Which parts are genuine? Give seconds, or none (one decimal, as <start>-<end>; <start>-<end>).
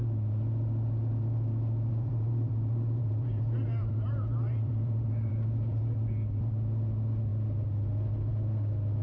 0.0-1.9; 5.8-9.0